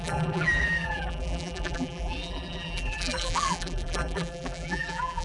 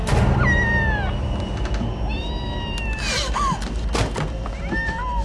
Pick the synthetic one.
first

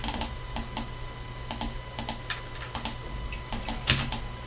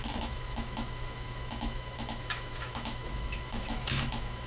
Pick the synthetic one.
second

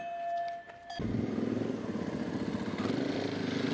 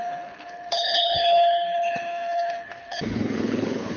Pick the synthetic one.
second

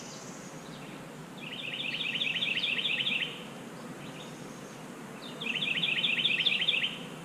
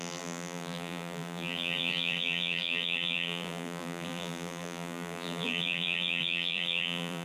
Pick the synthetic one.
second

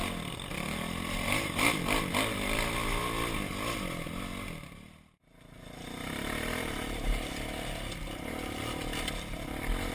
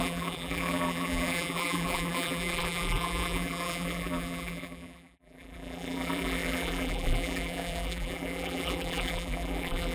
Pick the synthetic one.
second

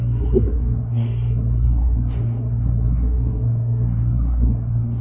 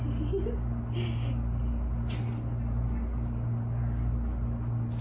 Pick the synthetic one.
first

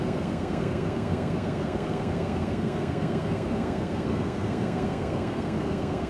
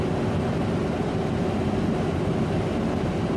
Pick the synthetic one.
first